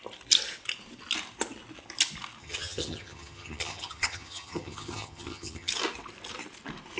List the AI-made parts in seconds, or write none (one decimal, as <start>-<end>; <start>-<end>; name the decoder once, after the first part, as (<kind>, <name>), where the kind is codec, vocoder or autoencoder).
2.4-5.7 (vocoder, HiFi-GAN)